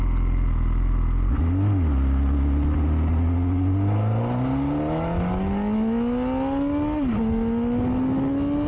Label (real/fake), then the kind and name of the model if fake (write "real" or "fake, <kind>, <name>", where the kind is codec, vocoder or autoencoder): real